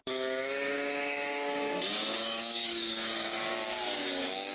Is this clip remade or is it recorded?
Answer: remade